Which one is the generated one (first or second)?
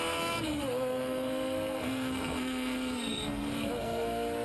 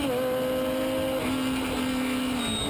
first